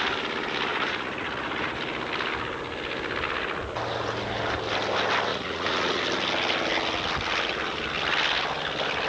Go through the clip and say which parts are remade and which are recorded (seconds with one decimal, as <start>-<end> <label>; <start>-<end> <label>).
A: 0.0-0.7 recorded; 0.7-1.8 remade; 1.8-5.3 recorded; 5.3-6.0 remade; 6.0-9.1 recorded